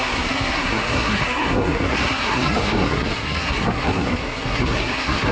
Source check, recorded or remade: remade